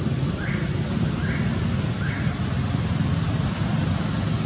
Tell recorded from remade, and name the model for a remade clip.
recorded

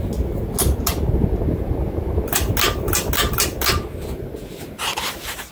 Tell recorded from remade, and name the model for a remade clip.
recorded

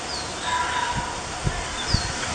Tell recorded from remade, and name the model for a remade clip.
recorded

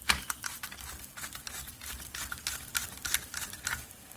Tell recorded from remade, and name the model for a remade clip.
recorded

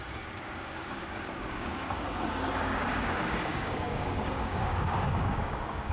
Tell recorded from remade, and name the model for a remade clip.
remade, codec, DAC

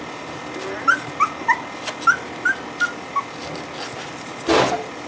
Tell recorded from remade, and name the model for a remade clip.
recorded